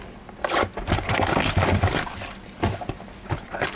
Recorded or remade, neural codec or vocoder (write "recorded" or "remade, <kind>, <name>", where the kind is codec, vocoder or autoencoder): recorded